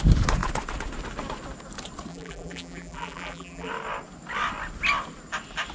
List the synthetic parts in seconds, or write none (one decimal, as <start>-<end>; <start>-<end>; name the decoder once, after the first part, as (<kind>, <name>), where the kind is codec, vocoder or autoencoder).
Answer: 2.1-3.7 (vocoder, BigVGAN v2)